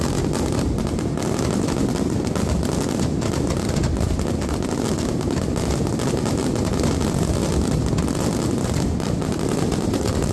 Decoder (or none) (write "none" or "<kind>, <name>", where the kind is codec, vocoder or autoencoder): none